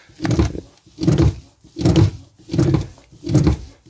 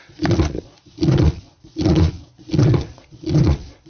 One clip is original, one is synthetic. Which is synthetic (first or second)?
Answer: second